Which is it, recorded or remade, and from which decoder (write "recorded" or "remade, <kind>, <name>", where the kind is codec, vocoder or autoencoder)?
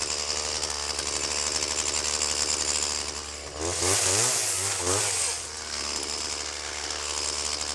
recorded